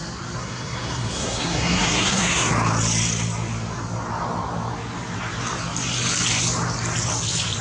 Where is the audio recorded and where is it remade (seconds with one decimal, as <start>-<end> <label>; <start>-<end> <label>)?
0.0-0.4 recorded; 0.4-2.5 remade; 2.5-7.6 recorded